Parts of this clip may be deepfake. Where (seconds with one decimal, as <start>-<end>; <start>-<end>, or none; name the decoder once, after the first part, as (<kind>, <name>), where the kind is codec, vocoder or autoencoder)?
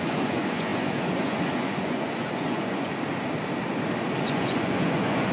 0.0-2.9 (vocoder, Vocos); 4.2-5.3